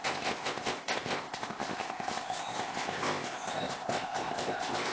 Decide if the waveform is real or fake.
fake